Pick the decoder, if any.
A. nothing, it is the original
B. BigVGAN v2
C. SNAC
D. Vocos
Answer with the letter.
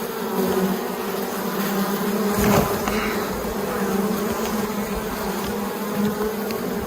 A